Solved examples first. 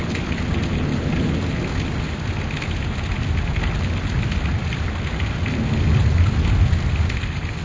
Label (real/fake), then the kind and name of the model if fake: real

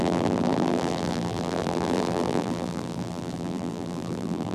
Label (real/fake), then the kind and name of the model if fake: fake, vocoder, BigVGAN v2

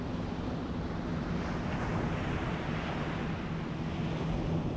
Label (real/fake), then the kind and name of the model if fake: real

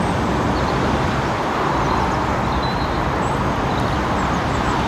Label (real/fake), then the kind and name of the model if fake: real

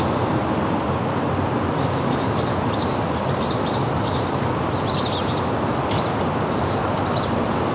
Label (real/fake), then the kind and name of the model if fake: fake, vocoder, BigVGAN v2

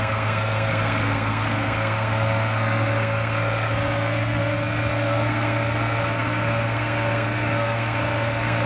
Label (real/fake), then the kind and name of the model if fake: fake, codec, SNAC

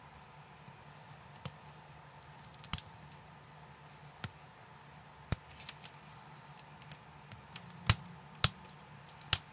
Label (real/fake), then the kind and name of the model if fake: real